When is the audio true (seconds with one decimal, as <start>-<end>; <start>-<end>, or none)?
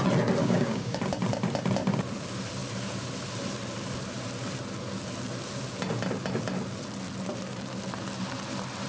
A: 0.0-0.4; 1.0-8.9